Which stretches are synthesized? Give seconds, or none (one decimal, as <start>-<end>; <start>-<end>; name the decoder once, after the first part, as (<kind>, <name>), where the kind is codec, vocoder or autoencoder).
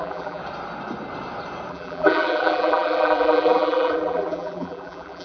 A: 0.0-0.4 (vocoder, BigVGAN v2); 1.7-5.2